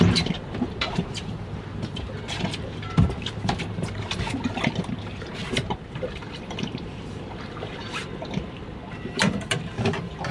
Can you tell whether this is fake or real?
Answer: fake